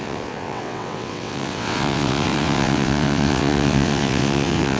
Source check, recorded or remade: remade